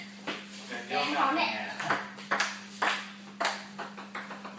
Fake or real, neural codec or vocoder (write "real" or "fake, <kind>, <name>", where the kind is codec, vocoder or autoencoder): real